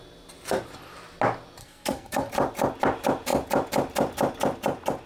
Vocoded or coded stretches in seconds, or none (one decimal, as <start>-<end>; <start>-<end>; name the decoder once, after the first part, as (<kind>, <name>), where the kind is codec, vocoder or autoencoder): 1.6-2.3 (codec, SNAC)